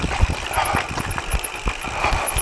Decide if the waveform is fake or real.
real